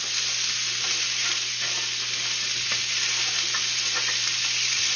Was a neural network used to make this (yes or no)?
no